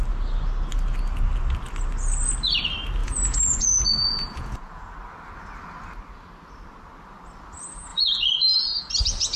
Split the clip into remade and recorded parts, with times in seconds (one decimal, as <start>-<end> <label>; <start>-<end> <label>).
0.0-3.0 recorded; 3.0-4.9 remade; 4.9-7.9 recorded; 7.9-8.9 remade; 8.9-9.4 recorded